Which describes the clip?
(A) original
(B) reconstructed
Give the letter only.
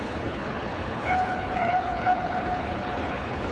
B